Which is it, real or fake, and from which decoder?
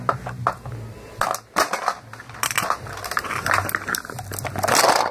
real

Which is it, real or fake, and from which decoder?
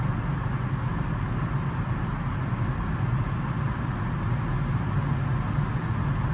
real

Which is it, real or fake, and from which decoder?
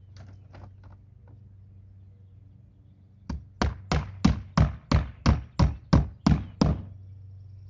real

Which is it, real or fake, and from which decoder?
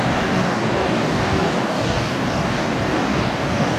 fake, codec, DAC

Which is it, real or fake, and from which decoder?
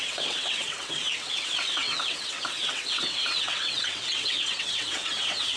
fake, vocoder, WaveNeXt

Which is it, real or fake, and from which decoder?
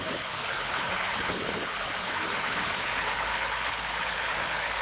fake, codec, HILCodec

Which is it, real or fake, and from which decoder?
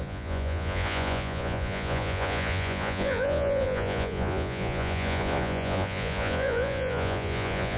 fake, vocoder, Vocos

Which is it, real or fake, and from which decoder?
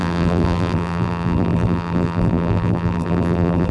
fake, vocoder, BigVGAN v2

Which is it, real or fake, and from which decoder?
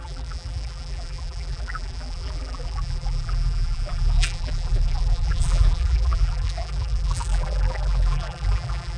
fake, vocoder, BigVGAN v2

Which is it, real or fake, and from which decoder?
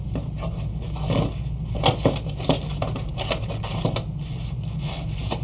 real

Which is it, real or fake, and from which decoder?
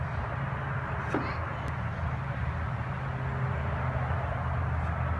real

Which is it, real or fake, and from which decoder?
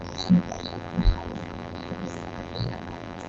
fake, vocoder, BigVGAN v2